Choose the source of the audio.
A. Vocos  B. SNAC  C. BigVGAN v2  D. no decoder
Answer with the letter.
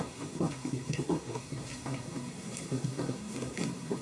B